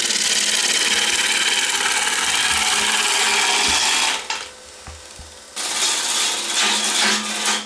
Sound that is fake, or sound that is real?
real